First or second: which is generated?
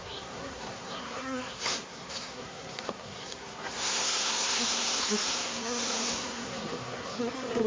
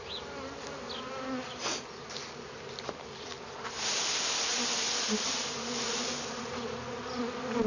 first